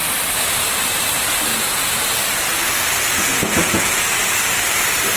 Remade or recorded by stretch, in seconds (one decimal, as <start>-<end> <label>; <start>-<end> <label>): 0.0-1.5 recorded; 1.5-2.0 remade; 2.0-3.3 recorded; 3.3-4.0 remade; 4.0-5.2 recorded